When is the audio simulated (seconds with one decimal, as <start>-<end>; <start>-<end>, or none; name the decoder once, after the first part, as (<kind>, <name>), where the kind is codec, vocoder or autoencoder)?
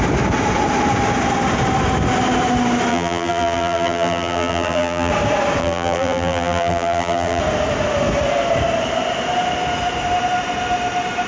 2.9-5.1 (vocoder, BigVGAN v2); 5.6-7.4